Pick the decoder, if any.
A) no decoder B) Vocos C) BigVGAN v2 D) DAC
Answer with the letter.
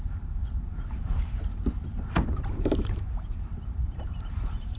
C